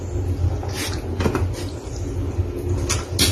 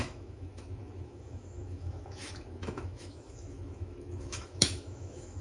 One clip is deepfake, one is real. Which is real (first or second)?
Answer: first